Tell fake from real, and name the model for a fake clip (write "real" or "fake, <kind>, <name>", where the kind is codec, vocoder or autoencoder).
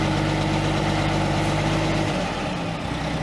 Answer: real